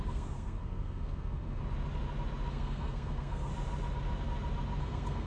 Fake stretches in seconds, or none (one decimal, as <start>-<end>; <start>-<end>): 0.0-1.6; 2.5-3.5; 4.8-5.3